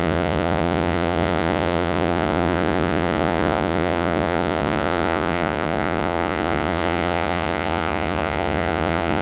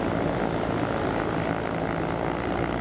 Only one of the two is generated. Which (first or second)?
first